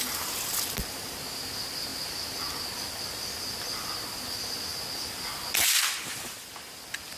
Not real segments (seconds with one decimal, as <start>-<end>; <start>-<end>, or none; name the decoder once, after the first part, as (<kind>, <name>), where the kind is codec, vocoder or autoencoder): none